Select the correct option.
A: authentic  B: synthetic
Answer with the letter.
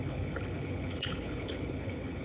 B